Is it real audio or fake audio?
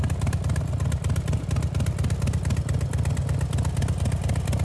real